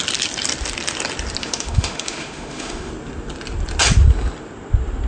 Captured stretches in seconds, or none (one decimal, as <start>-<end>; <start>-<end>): 0.0-1.4; 2.9-5.1